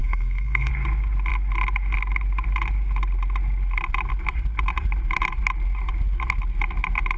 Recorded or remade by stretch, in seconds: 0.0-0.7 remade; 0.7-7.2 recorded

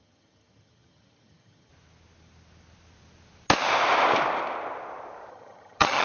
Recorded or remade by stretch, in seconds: 0.0-1.7 remade; 1.7-5.3 recorded; 5.3-6.0 remade